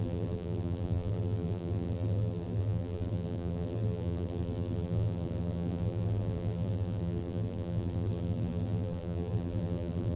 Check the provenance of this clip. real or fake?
fake